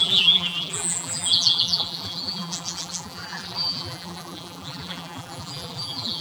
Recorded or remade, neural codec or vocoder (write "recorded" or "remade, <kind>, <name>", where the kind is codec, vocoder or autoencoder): remade, vocoder, BigVGAN v2